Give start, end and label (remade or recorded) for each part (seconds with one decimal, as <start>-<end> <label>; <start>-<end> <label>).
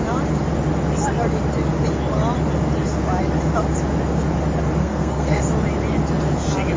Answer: 0.0-4.8 recorded; 4.8-5.4 remade; 5.4-6.8 recorded